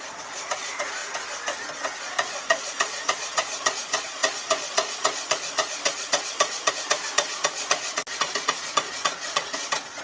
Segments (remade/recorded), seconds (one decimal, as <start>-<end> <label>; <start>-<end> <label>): 0.0-1.0 remade; 1.0-2.0 recorded; 2.0-10.0 remade